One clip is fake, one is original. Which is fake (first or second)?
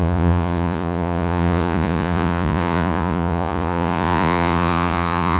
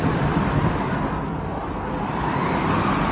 first